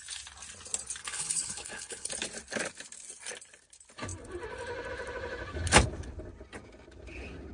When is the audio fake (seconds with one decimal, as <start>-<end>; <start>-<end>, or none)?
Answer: 1.0-2.1